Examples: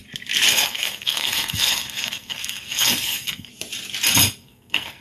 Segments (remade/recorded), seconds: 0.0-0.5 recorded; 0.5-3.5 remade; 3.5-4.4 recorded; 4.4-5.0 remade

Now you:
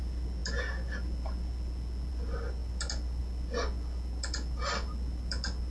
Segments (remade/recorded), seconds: 0.0-5.7 recorded

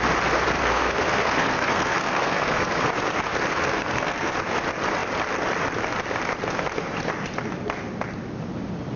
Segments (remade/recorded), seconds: 0.0-0.6 recorded; 0.6-2.9 remade; 2.9-3.5 recorded; 3.5-4.3 remade; 4.3-9.0 recorded

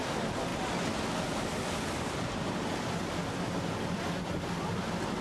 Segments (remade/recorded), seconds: 0.0-5.2 recorded